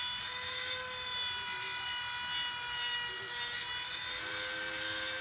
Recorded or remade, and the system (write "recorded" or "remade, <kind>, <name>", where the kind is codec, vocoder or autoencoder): recorded